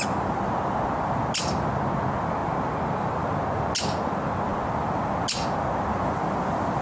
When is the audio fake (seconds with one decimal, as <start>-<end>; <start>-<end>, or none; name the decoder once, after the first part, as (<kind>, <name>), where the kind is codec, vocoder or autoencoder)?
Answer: none